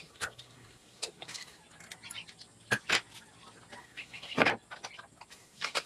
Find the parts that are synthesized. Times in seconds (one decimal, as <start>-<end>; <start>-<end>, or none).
0.0-1.6; 3.8-4.5; 5.3-5.9